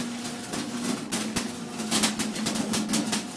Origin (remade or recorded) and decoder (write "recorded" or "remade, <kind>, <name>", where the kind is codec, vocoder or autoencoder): recorded